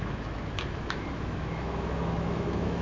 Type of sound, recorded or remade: remade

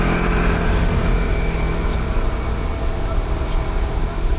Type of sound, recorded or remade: recorded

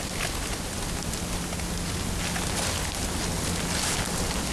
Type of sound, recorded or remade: recorded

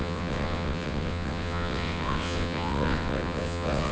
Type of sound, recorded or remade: remade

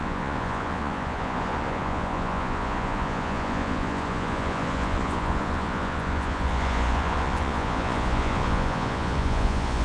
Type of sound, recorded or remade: remade